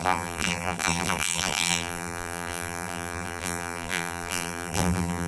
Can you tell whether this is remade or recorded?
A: remade